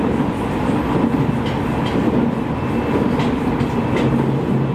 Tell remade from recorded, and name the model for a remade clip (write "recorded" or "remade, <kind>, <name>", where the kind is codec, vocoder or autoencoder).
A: recorded